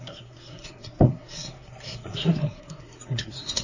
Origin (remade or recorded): remade